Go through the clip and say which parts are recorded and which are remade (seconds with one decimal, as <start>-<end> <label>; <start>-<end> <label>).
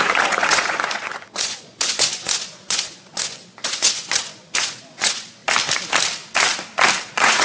0.0-5.4 remade; 5.4-7.0 recorded; 7.0-7.4 remade